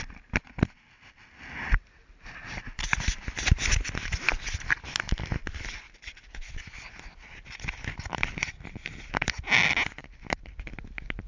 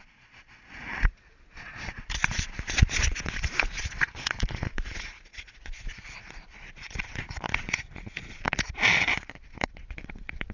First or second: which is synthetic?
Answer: second